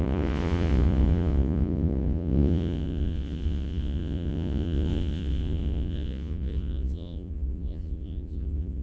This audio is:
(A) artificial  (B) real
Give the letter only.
A